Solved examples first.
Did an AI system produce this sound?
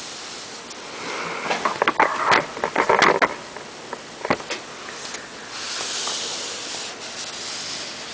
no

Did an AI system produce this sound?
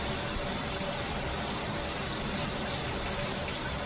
no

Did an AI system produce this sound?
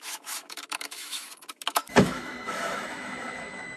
yes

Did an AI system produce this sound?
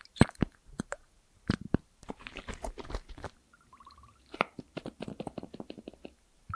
yes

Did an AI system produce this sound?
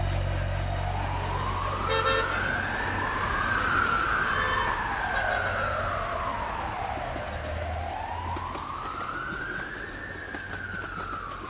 no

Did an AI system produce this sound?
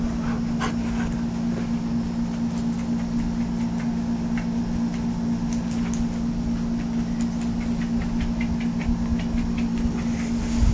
no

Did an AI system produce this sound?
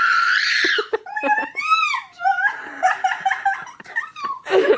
yes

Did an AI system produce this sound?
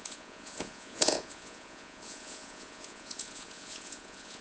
yes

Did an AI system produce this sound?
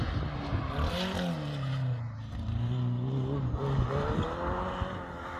no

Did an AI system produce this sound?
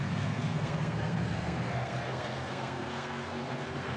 yes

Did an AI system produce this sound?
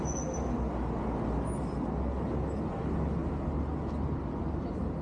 no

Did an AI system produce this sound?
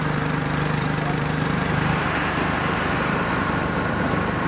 yes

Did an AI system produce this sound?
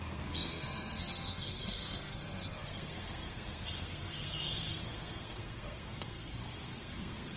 yes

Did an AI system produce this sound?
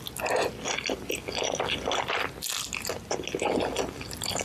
no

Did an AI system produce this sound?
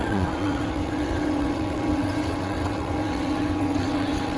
yes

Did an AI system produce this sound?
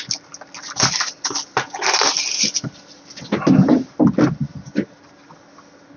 no